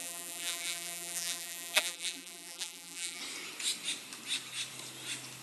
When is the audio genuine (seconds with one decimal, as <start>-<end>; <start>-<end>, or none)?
3.2-5.4